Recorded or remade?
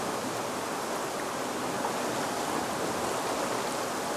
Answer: recorded